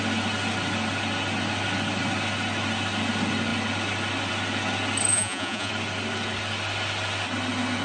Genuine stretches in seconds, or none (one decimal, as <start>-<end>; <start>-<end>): 0.0-5.1; 5.7-7.8